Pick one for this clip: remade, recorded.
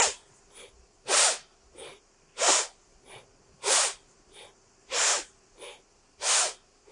recorded